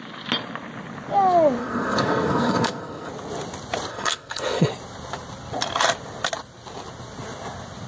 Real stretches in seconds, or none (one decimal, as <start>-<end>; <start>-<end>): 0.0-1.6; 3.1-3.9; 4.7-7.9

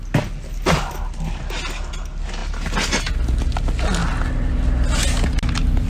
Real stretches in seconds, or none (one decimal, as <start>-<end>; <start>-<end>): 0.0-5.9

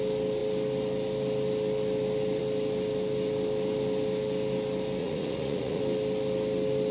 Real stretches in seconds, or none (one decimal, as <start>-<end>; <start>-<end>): 0.0-5.0; 5.8-6.9

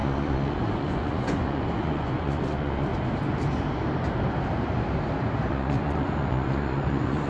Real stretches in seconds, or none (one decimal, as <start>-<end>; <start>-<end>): 2.9-5.5

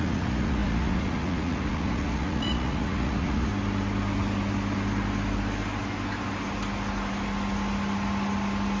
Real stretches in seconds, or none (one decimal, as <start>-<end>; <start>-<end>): 3.5-8.8